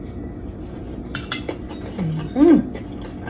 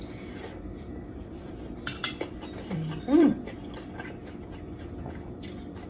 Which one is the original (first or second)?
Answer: first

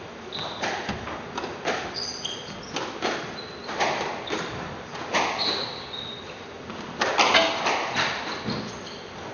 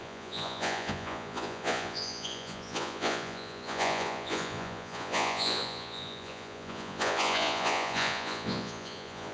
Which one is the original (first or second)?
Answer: first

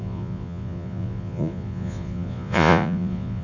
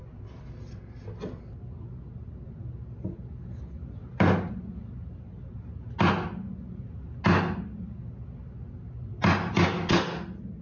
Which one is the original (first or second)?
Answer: second